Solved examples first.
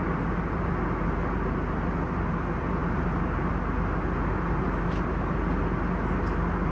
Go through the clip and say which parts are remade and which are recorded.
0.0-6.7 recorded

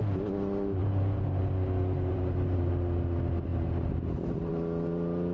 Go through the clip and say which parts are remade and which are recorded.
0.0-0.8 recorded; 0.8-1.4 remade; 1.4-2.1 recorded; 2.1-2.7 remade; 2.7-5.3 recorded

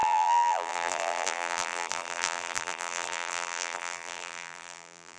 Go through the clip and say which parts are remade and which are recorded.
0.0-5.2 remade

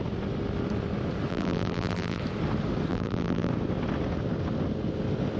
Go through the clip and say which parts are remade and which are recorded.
0.0-1.3 recorded; 1.3-2.2 remade; 2.2-2.9 recorded; 2.9-3.5 remade; 3.5-5.4 recorded